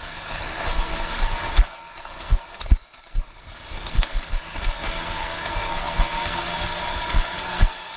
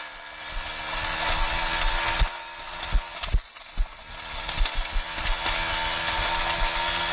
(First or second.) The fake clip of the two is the first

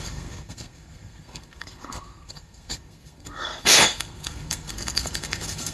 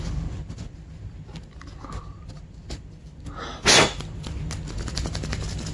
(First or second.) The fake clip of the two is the first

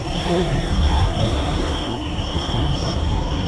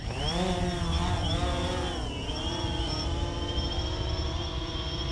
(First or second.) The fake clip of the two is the first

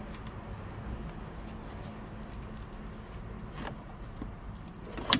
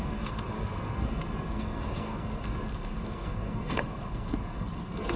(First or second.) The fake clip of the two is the second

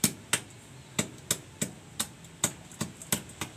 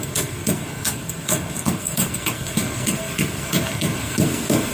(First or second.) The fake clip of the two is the second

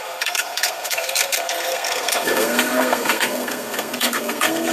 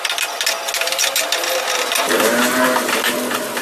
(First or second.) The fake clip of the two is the first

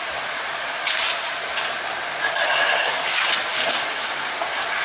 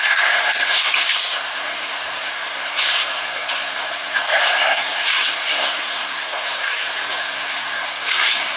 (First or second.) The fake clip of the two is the second